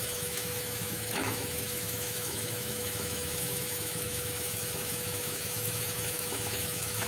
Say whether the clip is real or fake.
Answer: fake